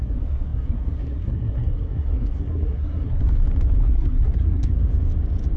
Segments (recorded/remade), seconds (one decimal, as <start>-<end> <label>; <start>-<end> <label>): 0.0-3.2 remade; 3.2-3.8 recorded; 3.8-4.9 remade; 4.9-5.6 recorded

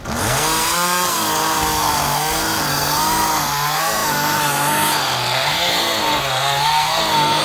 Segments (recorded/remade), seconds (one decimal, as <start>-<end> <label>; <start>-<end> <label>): 0.0-7.4 remade

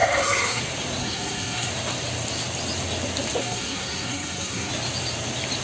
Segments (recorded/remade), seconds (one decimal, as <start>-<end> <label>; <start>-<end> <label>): 0.0-0.6 remade; 0.6-1.0 recorded; 1.0-1.7 remade; 1.7-3.4 recorded; 3.4-4.7 remade; 4.7-5.6 recorded

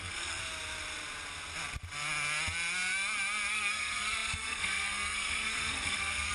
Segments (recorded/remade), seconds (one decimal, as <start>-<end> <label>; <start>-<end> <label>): 0.0-0.4 remade; 0.4-3.5 recorded; 3.5-6.3 remade

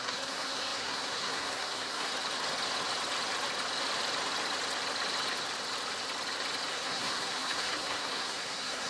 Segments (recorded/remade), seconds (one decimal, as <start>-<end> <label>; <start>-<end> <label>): 0.0-2.1 remade; 2.1-6.7 recorded; 6.7-8.9 remade

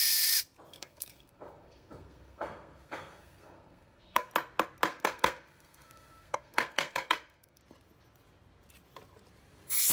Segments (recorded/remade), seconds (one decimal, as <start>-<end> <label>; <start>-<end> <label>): 0.0-0.7 recorded; 0.7-4.3 remade; 4.3-4.9 recorded; 4.9-7.6 remade; 7.6-9.9 recorded